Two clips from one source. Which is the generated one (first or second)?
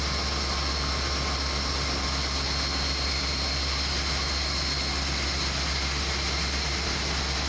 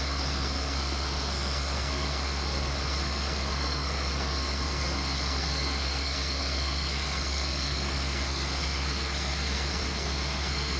second